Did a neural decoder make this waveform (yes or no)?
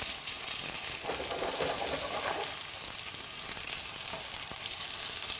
no